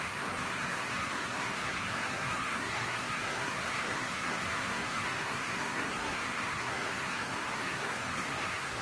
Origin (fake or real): fake